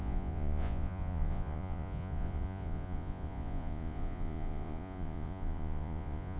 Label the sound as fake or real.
fake